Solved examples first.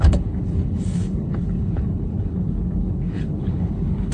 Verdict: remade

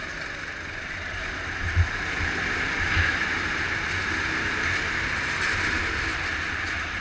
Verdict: recorded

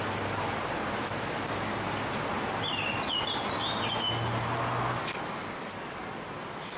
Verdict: recorded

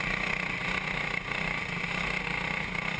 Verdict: recorded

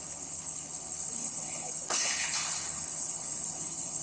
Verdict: remade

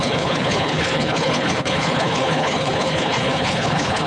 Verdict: remade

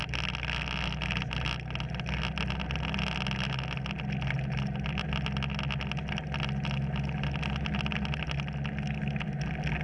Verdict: recorded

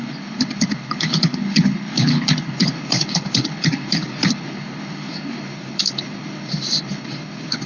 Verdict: remade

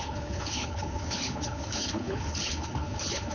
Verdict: remade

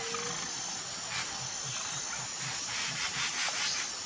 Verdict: recorded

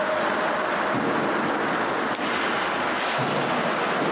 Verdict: recorded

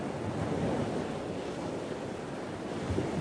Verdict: recorded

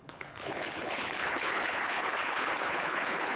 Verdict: remade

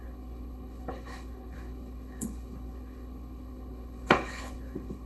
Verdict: remade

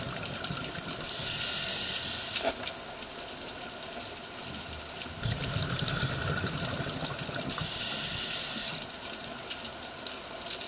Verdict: recorded